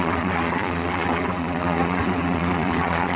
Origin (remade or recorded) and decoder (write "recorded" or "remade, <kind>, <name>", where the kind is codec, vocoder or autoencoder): remade, vocoder, Vocos